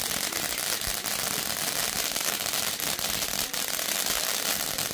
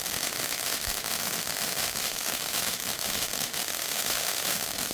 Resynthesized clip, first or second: second